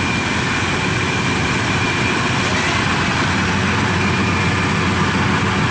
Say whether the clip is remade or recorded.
recorded